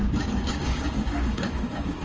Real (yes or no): no